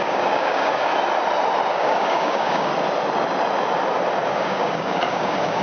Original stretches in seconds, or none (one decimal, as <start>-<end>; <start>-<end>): 0.9-1.7; 2.7-4.3

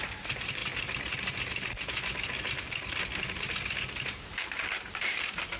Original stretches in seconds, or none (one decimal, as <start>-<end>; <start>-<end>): 0.6-3.9